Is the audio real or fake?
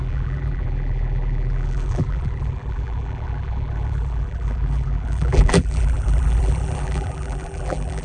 fake